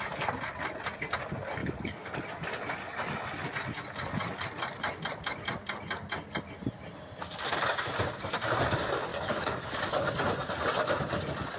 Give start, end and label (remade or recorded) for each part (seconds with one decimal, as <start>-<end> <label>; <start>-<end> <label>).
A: 0.0-1.6 recorded; 1.6-2.2 remade; 2.2-9.1 recorded; 9.1-10.1 remade; 10.1-11.6 recorded